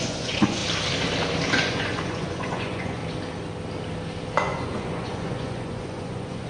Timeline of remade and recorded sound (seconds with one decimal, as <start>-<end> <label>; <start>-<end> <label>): 0.0-0.6 remade; 0.6-1.5 recorded; 1.5-3.0 remade; 3.0-4.3 recorded; 4.3-6.5 remade

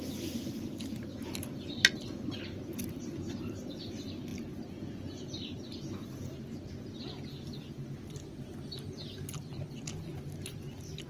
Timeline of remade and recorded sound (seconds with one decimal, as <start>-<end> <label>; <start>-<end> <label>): 0.0-11.1 recorded

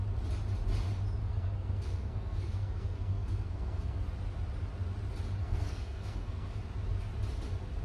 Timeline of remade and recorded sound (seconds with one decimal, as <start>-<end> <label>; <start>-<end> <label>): 0.0-1.2 recorded; 1.2-4.0 remade; 4.0-5.4 recorded; 5.4-6.6 remade; 6.6-7.8 recorded

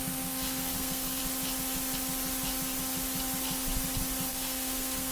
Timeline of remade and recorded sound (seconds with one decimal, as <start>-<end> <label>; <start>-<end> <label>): 0.0-1.2 remade; 1.2-4.3 recorded; 4.3-5.1 remade

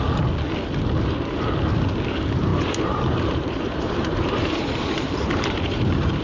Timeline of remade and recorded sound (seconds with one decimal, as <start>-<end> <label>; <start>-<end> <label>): 0.0-2.5 recorded; 2.5-6.2 remade

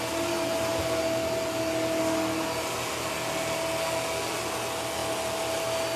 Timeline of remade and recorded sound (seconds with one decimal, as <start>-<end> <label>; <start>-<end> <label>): 0.0-6.0 recorded